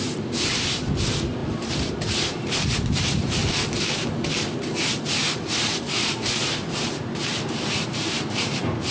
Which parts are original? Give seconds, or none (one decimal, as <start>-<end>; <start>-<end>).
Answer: 3.4-4.9